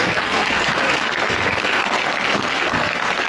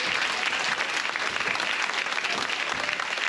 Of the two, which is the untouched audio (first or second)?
second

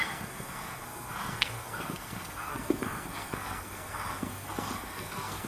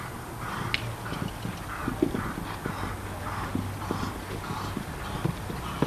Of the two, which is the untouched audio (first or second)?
second